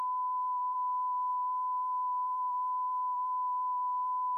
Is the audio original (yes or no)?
no